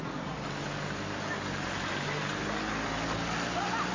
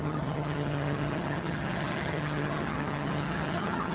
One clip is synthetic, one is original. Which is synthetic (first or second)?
second